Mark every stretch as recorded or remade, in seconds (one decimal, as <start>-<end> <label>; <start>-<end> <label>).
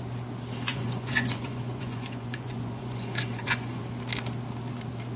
0.0-0.7 recorded; 0.7-3.8 remade; 3.8-5.2 recorded